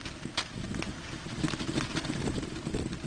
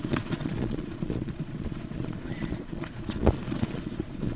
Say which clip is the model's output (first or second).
second